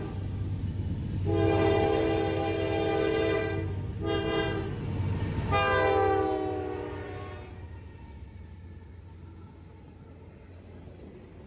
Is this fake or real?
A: real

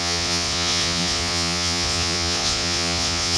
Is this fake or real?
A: fake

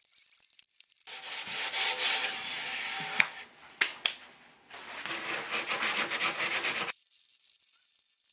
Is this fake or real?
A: real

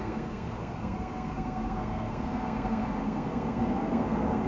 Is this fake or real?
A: fake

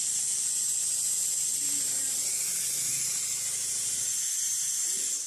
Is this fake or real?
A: real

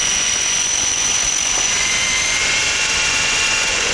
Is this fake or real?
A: fake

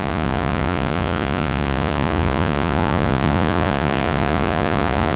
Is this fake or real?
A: fake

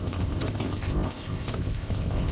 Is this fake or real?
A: fake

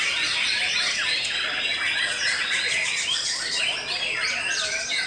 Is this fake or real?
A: real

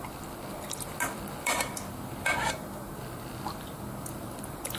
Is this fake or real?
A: fake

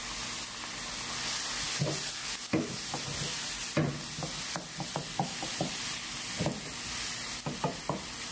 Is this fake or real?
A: real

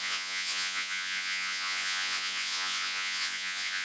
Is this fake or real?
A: fake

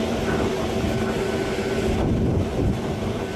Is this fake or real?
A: real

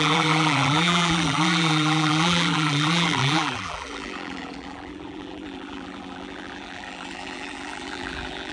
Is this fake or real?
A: fake